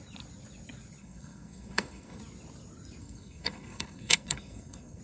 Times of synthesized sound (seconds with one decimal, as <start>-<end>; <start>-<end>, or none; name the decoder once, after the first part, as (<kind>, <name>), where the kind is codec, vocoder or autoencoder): 1.0-2.2 (codec, SNAC); 3.0-5.0